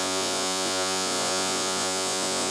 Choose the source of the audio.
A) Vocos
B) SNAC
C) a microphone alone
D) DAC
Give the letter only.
A